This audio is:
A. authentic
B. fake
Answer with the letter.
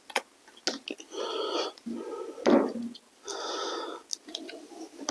A